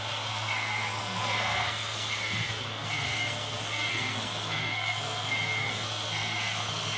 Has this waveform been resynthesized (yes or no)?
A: yes